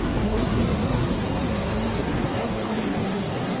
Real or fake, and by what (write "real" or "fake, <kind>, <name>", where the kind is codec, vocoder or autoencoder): fake, codec, SNAC